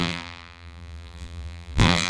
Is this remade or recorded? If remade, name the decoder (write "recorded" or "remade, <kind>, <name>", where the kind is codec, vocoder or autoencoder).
remade, vocoder, BigVGAN v2